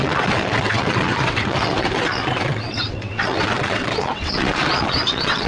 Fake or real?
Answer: fake